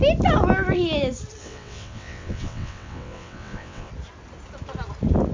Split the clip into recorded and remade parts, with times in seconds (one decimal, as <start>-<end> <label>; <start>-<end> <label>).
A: 0.0-1.4 recorded; 1.4-3.9 remade; 3.9-5.3 recorded